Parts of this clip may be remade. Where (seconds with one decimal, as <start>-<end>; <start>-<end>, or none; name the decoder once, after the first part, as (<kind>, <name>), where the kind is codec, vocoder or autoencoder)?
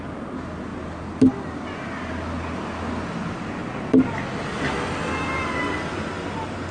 none